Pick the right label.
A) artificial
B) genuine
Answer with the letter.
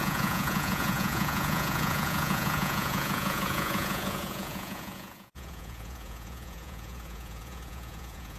A